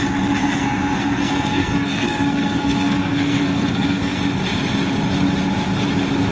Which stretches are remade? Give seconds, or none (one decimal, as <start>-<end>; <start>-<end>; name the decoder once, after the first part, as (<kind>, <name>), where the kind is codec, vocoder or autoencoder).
0.4-4.2 (codec, SNAC)